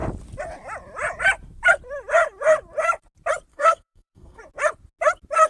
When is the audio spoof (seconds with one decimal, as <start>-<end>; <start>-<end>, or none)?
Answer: 3.5-4.4